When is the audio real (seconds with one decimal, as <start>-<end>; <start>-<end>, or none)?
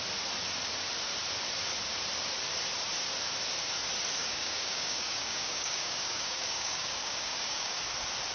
0.0-4.2; 7.8-8.3